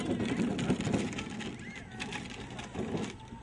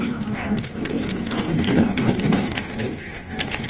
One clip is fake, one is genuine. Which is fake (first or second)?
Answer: second